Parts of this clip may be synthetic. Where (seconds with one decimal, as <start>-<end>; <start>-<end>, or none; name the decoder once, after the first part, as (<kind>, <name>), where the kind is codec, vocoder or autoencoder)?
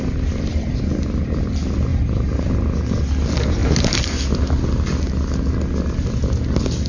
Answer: 1.9-2.5 (vocoder, BigVGAN v2); 3.6-4.4